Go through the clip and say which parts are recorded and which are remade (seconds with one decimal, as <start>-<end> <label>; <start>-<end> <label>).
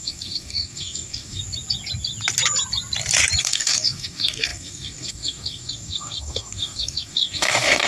0.0-1.4 remade; 1.4-3.4 recorded; 3.4-7.9 remade